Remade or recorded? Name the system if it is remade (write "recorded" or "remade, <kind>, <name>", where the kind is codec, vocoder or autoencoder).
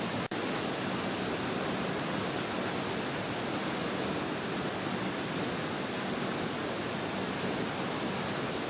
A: recorded